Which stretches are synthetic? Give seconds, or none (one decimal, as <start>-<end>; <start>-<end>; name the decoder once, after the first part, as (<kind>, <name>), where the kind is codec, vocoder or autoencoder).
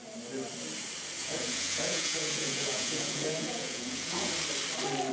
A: 1.2-4.3 (vocoder, Vocos)